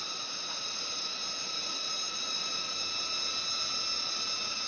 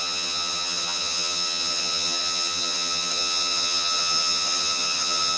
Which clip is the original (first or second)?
first